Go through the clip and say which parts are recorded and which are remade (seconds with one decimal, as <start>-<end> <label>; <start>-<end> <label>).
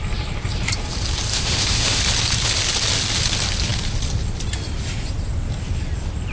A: 0.0-1.3 recorded; 1.3-2.0 remade; 2.0-6.3 recorded